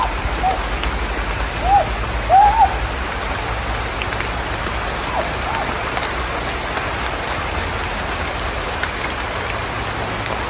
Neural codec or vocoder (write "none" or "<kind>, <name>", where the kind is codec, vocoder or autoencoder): none